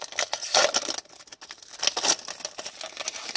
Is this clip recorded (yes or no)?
yes